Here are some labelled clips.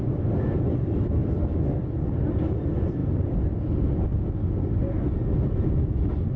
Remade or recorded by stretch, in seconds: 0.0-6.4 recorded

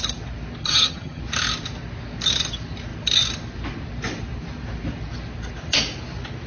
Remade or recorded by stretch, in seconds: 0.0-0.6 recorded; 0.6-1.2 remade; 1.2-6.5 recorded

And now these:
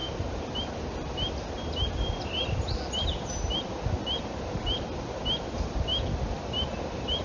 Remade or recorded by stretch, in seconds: 0.0-7.2 recorded